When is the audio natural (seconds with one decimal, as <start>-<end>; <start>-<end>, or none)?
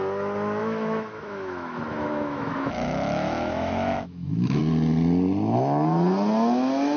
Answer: 0.0-0.6; 4.6-7.0